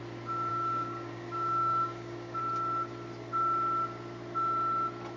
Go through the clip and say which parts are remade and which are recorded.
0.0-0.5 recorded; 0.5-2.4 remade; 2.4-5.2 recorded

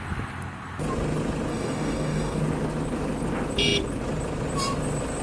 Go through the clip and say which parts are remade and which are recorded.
0.0-1.5 recorded; 1.5-2.4 remade; 2.4-5.2 recorded

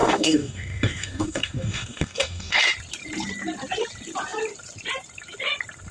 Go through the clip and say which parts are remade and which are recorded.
0.0-2.6 remade; 2.6-5.9 recorded

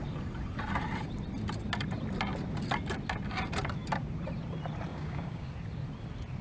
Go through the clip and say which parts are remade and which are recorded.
0.0-4.9 recorded; 4.9-5.5 remade; 5.5-6.4 recorded

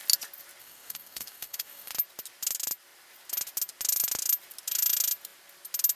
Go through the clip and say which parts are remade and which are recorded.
0.0-0.6 recorded; 0.6-1.9 remade; 1.9-6.0 recorded

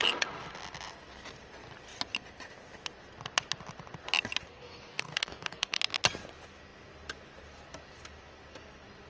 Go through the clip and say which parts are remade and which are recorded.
0.0-4.5 recorded; 4.5-5.8 remade; 5.8-9.1 recorded

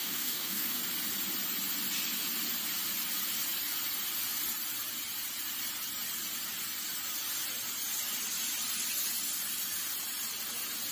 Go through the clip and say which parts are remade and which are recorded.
0.0-0.8 remade; 0.8-10.9 recorded